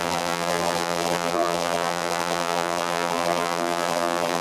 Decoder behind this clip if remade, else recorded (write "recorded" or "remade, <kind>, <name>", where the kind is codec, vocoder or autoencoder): remade, vocoder, BigVGAN v2